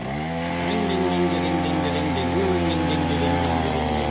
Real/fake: real